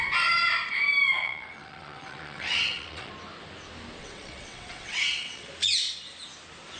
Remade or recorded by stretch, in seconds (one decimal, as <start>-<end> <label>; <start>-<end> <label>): 0.0-1.2 recorded; 1.2-3.1 remade; 3.1-4.0 recorded; 4.0-5.5 remade; 5.5-6.8 recorded

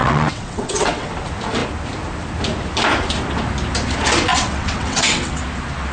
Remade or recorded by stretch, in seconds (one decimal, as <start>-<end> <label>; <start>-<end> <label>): 0.0-1.1 remade; 1.1-4.3 recorded; 4.3-5.4 remade; 5.4-5.9 recorded